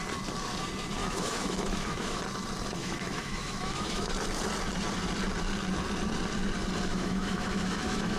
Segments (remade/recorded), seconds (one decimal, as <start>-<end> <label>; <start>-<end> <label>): 0.0-1.0 recorded; 1.0-2.2 remade; 2.2-2.8 recorded; 2.8-4.1 remade; 4.1-6.9 recorded; 6.9-8.2 remade